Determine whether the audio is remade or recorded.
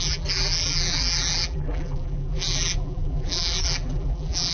remade